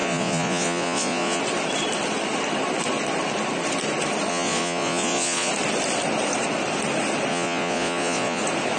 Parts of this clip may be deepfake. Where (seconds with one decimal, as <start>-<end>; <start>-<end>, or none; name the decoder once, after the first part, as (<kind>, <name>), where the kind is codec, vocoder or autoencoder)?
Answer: 0.0-1.4 (vocoder, Vocos); 4.3-5.5; 7.3-8.4